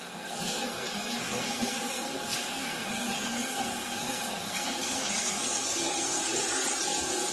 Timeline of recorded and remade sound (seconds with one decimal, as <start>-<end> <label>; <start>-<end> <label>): 0.0-6.2 remade; 6.2-7.3 recorded